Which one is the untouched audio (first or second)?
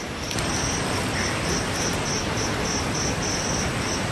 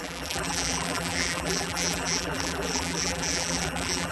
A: first